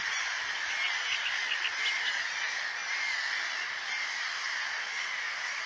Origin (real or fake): real